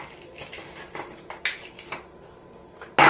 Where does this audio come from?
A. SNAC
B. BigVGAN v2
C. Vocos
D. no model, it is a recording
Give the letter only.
D